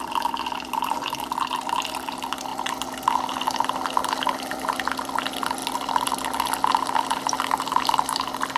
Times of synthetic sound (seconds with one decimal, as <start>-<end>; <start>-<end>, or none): none